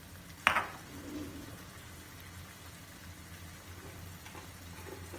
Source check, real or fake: real